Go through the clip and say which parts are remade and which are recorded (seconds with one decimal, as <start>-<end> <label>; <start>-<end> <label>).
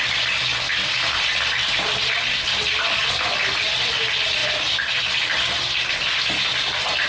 0.0-7.1 recorded